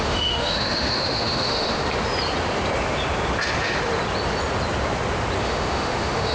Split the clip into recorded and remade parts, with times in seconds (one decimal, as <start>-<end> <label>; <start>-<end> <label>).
0.0-1.8 remade; 1.8-5.4 recorded; 5.4-6.3 remade